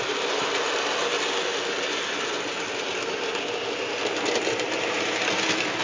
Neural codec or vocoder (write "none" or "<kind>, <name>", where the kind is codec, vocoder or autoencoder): none